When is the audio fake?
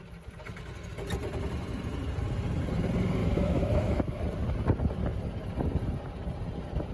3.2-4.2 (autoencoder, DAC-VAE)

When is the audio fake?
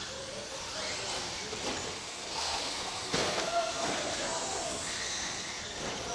1.9-5.6 (codec, SNAC)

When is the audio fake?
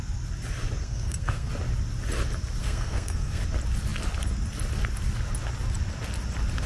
0.8-1.5 (codec, SNAC); 2.6-3.4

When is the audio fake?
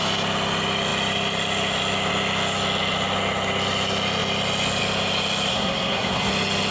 5.5-6.3 (codec, SNAC)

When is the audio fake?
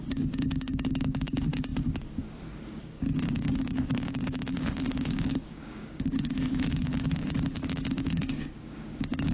0.0-9.3 (codec, DAC)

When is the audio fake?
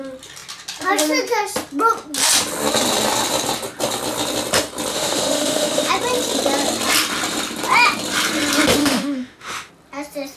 4.9-5.9 (autoencoder, DAC-VAE); 8.8-9.7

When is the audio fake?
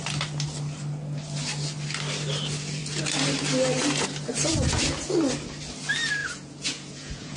6.2-7.4 (vocoder, Vocos)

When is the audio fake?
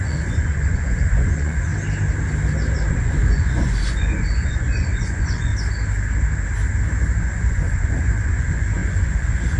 0.0-1.7 (vocoder, Vocos); 2.9-5.5; 7.2-9.6